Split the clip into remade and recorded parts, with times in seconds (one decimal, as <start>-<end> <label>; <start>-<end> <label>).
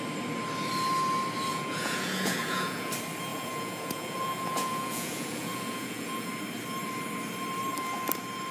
0.0-1.5 recorded; 1.5-2.9 remade; 2.9-3.3 recorded; 3.3-6.3 remade; 6.3-8.5 recorded